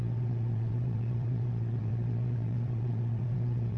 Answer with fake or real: fake